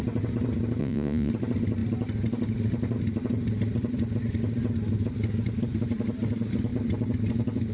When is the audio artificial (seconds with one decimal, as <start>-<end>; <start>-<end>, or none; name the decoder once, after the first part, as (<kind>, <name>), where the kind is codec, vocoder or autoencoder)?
0.8-1.3 (vocoder, Vocos)